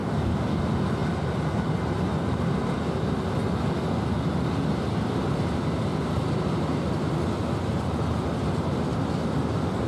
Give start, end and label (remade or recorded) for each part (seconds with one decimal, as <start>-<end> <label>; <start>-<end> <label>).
0.0-0.6 remade; 0.6-9.9 recorded